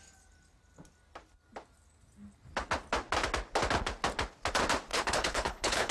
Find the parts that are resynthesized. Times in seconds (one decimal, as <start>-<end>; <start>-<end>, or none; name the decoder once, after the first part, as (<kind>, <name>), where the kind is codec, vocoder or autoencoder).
4.9-5.9 (codec, HILCodec)